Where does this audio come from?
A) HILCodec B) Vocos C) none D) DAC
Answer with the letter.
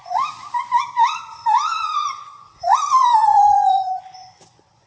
B